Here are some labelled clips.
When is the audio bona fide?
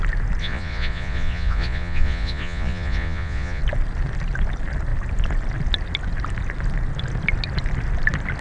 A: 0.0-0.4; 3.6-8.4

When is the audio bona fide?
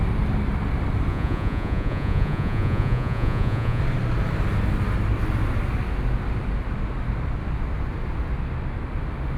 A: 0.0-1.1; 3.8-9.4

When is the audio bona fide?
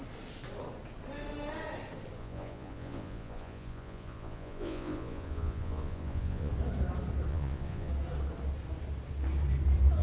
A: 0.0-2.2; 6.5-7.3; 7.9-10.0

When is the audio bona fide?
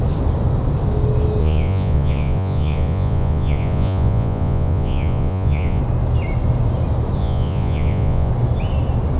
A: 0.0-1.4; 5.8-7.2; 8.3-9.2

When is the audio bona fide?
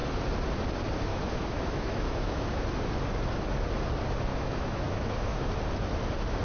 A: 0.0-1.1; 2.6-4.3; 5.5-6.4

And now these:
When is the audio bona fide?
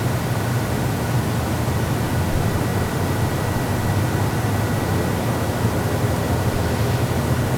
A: 0.0-7.6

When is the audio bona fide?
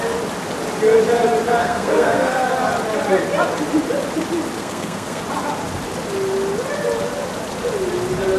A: 0.0-1.6; 2.5-4.6; 5.2-8.4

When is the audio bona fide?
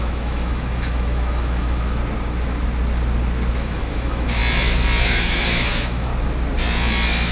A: 2.0-3.5; 4.4-5.0; 6.1-7.3